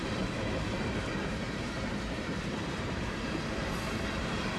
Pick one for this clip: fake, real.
fake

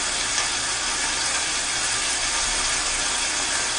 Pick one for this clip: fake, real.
real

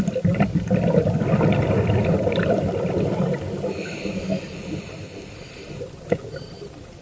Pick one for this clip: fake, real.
real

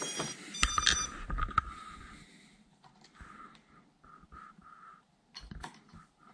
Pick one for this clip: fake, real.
real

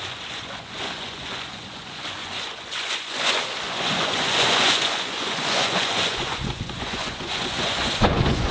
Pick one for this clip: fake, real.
fake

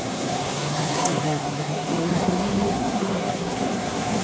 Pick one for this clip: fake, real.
fake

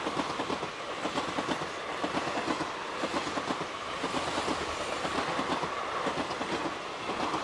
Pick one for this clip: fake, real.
fake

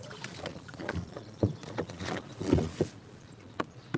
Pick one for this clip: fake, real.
fake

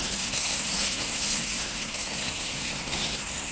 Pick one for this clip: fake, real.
fake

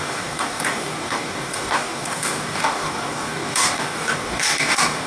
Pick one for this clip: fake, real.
fake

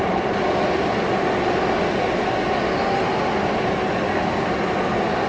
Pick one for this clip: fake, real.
real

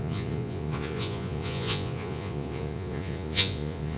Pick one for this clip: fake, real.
fake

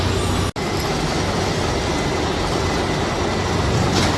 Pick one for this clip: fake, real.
real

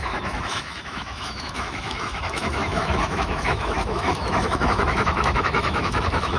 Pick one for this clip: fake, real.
fake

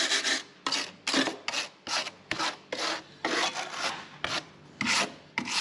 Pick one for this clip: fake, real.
real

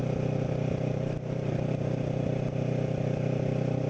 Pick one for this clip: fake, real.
real